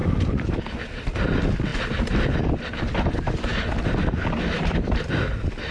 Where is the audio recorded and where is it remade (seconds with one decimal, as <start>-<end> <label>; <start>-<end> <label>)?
0.0-5.7 recorded